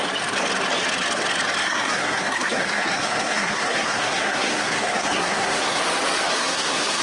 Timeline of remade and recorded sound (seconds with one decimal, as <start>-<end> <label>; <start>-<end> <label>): 0.0-1.6 recorded; 1.6-5.8 remade; 5.8-6.3 recorded; 6.3-7.0 remade